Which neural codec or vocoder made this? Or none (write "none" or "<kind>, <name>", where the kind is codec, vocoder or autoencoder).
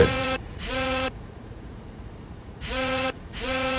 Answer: vocoder, Vocos